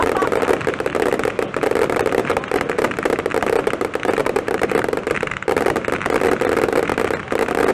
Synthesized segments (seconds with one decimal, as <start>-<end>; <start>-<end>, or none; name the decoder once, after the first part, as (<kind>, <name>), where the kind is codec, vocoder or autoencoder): 4.2-5.1 (vocoder, BigVGAN v2)